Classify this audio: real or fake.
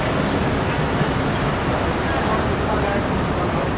real